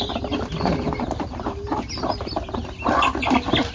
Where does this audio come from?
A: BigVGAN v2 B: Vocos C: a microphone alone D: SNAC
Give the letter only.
C